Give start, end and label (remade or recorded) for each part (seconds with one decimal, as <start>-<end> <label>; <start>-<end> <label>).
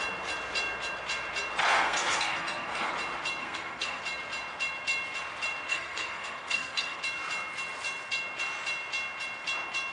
0.0-1.6 recorded; 1.6-2.9 remade; 2.9-3.4 recorded; 3.4-4.0 remade; 4.0-5.7 recorded; 5.7-7.0 remade; 7.0-9.9 recorded